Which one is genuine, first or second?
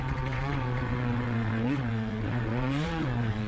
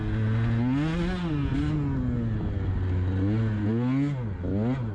second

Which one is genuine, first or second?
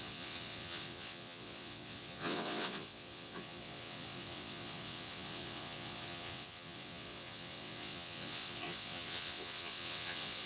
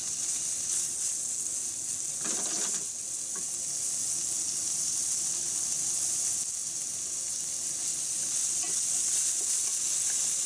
second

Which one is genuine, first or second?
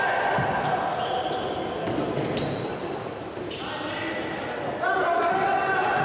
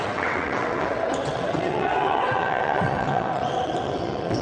first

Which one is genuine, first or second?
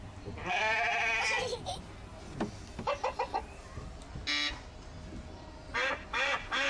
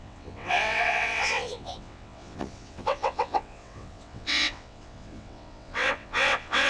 first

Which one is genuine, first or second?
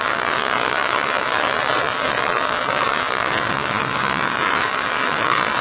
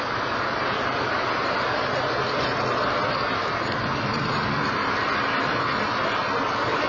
second